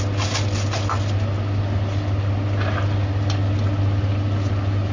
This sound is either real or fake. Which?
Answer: real